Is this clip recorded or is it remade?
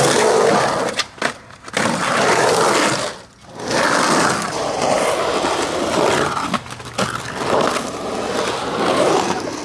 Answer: recorded